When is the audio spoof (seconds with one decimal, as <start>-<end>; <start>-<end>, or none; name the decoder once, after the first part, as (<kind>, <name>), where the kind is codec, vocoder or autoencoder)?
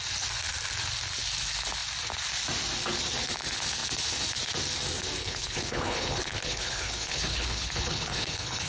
5.2-8.7 (codec, HILCodec)